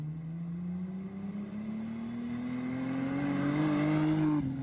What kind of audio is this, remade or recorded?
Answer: recorded